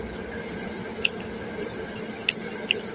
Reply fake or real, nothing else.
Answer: real